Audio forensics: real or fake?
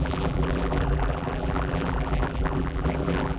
fake